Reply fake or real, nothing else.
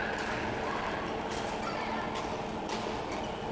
real